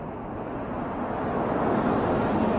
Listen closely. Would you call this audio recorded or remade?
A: recorded